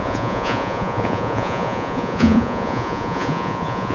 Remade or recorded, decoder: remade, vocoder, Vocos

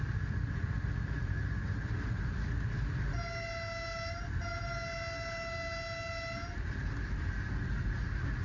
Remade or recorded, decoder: recorded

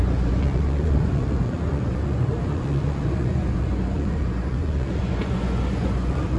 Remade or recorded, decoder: remade, vocoder, Vocos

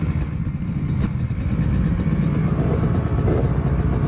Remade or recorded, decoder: recorded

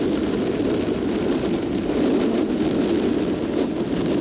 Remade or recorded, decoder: recorded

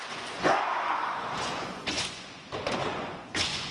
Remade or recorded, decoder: remade, vocoder, Vocos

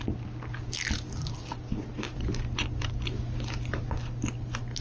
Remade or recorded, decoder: recorded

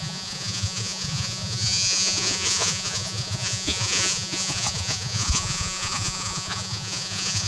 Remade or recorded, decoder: remade, vocoder, Vocos